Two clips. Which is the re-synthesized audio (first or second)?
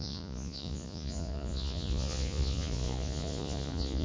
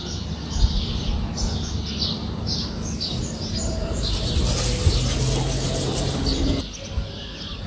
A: first